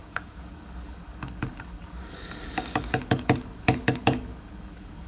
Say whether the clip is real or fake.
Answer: fake